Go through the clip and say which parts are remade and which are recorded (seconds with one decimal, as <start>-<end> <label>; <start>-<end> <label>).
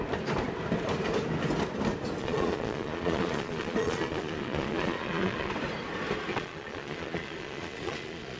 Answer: 0.0-2.2 recorded; 2.2-5.5 remade; 5.5-6.3 recorded; 6.3-8.4 remade